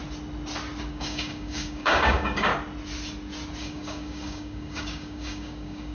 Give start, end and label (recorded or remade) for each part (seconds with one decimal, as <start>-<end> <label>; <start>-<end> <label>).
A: 0.0-0.9 recorded; 0.9-2.5 remade; 2.5-3.6 recorded; 3.6-5.9 remade